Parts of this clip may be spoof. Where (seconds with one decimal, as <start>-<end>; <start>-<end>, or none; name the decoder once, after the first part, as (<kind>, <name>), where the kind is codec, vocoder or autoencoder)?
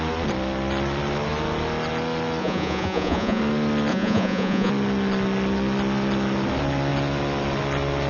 2.4-3.4 (vocoder, Vocos); 3.9-4.7